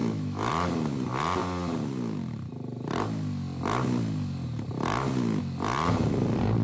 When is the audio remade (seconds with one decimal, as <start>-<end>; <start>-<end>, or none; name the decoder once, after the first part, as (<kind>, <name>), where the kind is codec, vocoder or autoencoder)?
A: 0.0-0.5 (autoencoder, DAC-VAE)